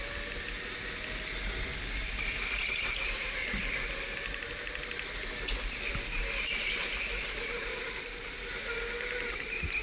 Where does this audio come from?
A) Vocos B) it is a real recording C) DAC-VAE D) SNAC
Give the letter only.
B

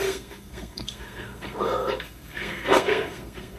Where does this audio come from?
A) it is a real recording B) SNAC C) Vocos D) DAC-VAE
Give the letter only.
B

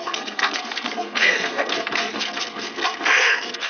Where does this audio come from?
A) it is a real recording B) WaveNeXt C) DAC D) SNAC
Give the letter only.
D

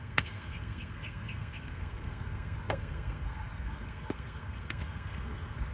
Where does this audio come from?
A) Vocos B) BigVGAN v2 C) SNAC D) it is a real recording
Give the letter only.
C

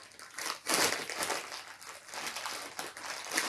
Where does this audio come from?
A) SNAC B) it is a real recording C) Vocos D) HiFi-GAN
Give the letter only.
B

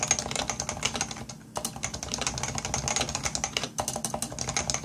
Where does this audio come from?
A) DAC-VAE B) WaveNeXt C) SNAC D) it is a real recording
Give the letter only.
D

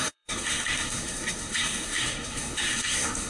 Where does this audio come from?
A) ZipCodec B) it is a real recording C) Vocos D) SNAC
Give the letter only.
D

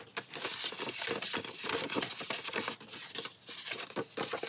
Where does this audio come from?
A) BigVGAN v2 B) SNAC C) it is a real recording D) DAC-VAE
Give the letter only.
C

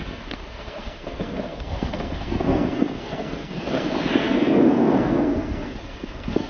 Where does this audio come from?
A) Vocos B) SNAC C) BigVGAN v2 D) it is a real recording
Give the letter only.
B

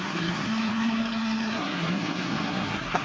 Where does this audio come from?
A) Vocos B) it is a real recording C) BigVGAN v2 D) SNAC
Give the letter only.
D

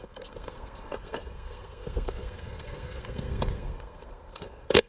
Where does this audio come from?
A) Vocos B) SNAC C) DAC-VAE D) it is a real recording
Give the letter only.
B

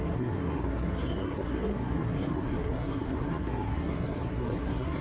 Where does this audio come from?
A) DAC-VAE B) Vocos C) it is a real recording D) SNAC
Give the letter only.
D